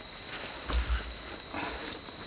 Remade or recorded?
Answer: recorded